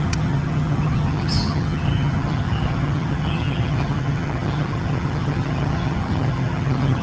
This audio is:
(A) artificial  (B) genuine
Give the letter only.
A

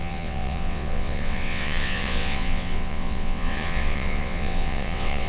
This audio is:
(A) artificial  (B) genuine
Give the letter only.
A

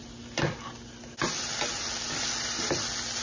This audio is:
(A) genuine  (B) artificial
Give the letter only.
A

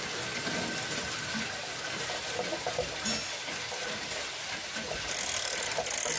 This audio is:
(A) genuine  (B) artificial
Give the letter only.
A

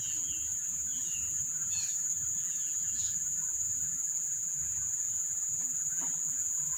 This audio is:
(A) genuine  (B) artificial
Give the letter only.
B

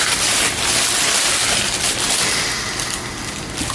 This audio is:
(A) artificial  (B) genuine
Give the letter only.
B